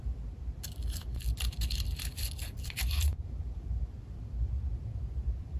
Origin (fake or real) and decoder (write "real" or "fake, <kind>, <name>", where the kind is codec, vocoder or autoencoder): fake, vocoder, BigVGAN v2